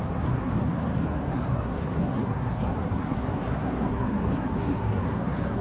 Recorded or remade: remade